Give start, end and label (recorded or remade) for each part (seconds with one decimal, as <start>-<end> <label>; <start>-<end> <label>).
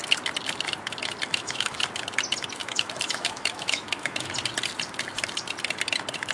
0.0-1.3 recorded; 1.3-1.8 remade; 1.8-2.6 recorded; 2.6-4.3 remade; 4.3-6.3 recorded